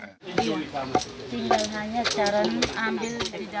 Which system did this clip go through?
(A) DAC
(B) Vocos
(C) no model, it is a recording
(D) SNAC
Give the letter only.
C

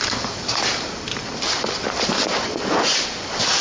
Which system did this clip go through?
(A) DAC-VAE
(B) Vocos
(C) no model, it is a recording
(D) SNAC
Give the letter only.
C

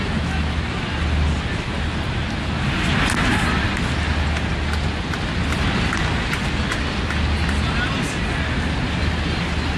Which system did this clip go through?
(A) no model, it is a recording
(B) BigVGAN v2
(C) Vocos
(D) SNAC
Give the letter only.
A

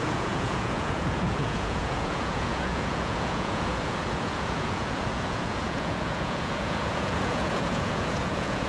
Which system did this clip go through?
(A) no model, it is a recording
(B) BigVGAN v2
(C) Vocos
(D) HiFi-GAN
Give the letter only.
C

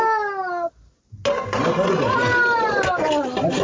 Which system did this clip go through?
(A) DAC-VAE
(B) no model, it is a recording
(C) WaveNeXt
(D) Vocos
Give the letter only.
B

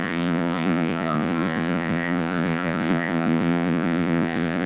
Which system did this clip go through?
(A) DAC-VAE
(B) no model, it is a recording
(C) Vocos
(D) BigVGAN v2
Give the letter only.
C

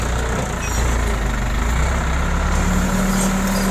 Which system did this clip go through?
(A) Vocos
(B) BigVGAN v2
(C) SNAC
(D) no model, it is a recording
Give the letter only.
D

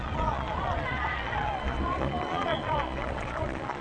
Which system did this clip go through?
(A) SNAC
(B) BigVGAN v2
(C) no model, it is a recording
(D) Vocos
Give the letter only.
D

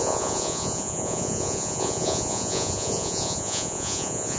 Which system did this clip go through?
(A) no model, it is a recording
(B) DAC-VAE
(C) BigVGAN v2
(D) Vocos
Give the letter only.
D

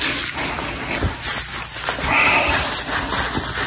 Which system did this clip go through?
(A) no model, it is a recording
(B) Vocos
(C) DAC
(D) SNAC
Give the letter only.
A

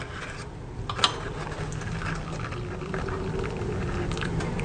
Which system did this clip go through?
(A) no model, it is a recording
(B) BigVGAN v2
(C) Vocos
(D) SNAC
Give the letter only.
A